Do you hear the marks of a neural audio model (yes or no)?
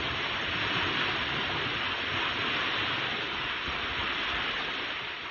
no